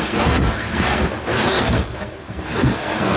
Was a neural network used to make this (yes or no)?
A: yes